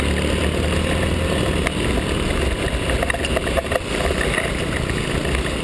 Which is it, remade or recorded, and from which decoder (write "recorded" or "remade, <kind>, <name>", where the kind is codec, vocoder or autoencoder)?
recorded